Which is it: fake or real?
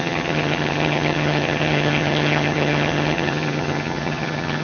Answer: fake